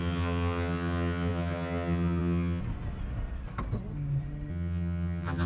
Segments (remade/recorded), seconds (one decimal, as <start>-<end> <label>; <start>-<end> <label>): 0.0-2.6 remade; 2.6-4.5 recorded; 4.5-5.5 remade